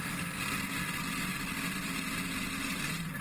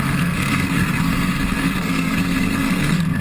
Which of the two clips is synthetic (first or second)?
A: second